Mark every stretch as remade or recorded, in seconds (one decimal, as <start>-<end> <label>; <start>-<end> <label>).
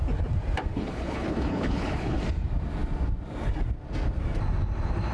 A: 0.0-0.7 recorded; 0.7-2.2 remade; 2.2-5.1 recorded